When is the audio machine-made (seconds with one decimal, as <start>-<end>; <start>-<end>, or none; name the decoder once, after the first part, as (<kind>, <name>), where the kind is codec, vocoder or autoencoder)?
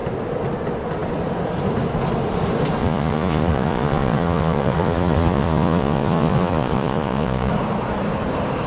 2.8-7.5 (vocoder, Vocos)